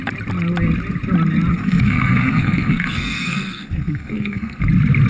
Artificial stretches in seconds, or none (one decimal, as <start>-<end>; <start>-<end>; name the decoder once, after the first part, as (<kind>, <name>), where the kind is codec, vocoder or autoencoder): 1.5-4.6 (codec, SNAC)